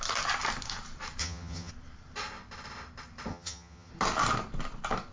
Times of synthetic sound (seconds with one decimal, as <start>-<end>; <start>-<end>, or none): 1.2-1.7; 3.3-3.9